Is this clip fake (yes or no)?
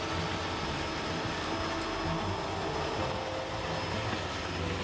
no